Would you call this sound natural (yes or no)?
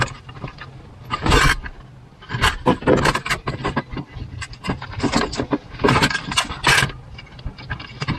yes